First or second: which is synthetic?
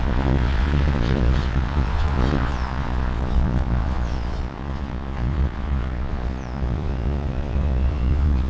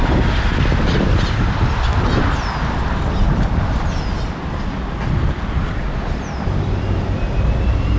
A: first